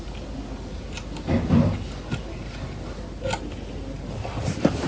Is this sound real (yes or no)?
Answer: yes